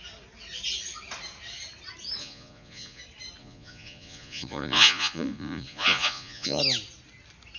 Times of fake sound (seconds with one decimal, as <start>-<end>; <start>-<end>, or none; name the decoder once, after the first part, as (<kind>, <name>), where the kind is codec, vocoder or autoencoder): 2.2-3.0 (vocoder, Vocos); 3.4-6.6